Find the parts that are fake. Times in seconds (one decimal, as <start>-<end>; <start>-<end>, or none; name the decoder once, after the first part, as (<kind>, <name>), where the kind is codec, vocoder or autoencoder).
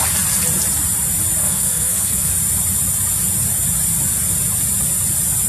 1.4-2.3 (codec, SNAC)